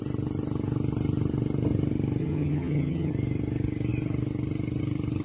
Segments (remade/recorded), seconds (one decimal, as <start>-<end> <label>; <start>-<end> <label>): 0.0-2.2 recorded; 2.2-3.1 remade; 3.1-5.2 recorded